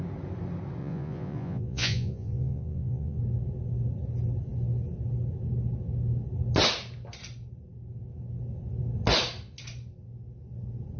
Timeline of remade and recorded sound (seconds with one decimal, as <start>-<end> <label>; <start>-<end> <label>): 0.0-0.8 recorded; 0.8-3.2 remade; 3.2-11.0 recorded